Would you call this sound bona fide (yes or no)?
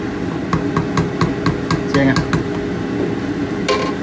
yes